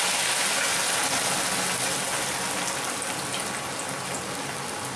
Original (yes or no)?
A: yes